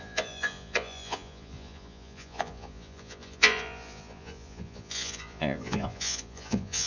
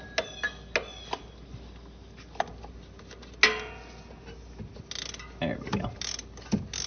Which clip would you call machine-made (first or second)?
first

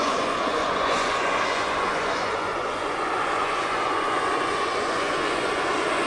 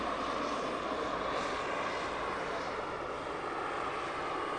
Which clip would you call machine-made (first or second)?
first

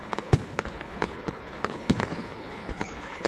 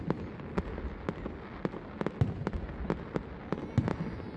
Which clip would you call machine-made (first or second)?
first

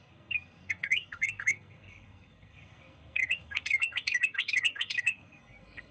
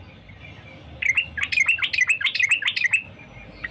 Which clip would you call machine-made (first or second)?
first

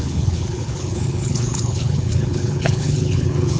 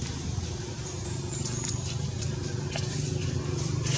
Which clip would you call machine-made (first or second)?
first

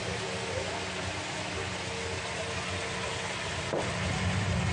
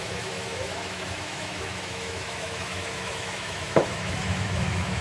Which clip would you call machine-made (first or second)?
second